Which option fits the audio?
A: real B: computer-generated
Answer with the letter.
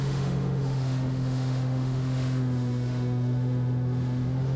B